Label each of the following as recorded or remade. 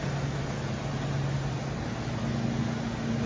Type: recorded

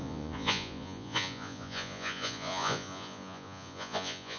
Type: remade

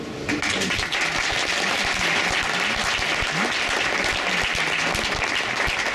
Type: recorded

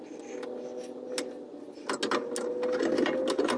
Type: recorded